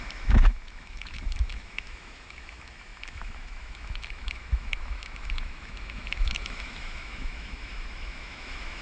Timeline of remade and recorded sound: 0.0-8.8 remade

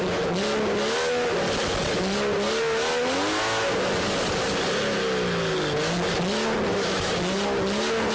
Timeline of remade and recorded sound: 0.0-6.7 recorded; 6.7-7.2 remade; 7.2-8.1 recorded

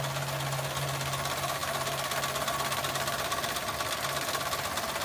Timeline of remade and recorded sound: 0.0-5.0 recorded

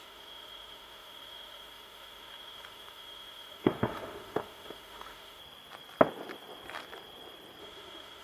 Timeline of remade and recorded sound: 0.0-5.4 remade; 5.4-7.6 recorded; 7.6-8.2 remade

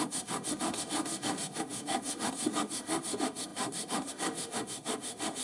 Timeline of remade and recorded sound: 0.0-5.4 remade

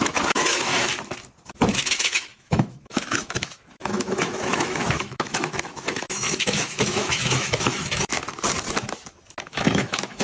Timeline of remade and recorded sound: 0.0-0.7 remade; 0.7-1.6 recorded; 1.6-8.1 remade; 8.1-9.4 recorded; 9.4-10.2 remade

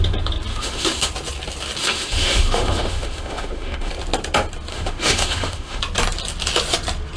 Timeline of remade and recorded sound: 0.0-0.5 recorded; 0.5-1.1 remade; 1.1-1.8 recorded; 1.8-3.9 remade; 3.9-4.7 recorded; 4.7-5.8 remade; 5.8-7.2 recorded